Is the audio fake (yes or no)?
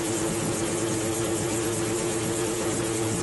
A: yes